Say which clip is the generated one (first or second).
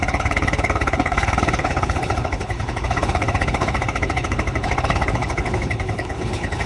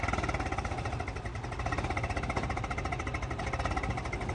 first